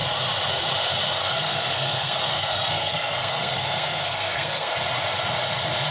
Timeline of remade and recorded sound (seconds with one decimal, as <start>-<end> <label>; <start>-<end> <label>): 0.0-1.2 recorded; 1.2-4.7 remade; 4.7-5.9 recorded